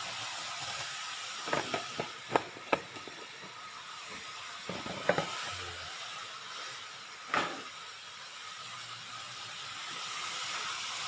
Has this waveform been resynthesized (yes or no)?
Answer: no